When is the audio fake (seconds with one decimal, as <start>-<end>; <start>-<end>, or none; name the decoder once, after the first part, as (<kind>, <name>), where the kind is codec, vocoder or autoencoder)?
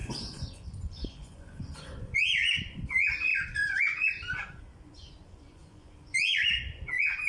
0.0-7.3 (vocoder, Vocos)